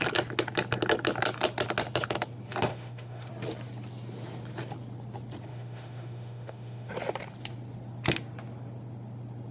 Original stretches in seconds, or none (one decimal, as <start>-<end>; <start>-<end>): 0.0-2.7; 3.3-5.5; 6.9-9.5